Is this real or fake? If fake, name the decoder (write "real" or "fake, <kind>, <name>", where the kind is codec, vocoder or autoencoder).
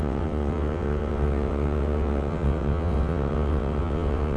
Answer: fake, vocoder, WaveNeXt